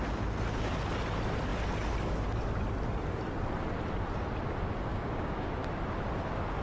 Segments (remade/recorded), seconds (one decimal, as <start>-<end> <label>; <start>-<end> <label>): 0.0-4.9 recorded; 4.9-5.5 remade; 5.5-6.6 recorded